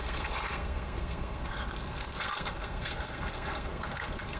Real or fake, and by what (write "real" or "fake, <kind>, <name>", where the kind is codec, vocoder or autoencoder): fake, codec, SNAC